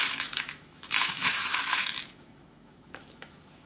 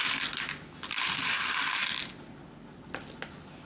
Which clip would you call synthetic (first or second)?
first